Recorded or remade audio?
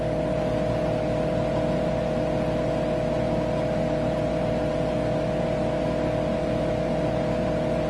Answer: recorded